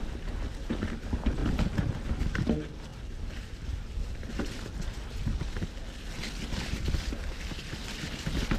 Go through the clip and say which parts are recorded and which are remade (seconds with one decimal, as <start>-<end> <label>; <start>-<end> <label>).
0.0-2.9 recorded; 2.9-4.3 remade; 4.3-8.6 recorded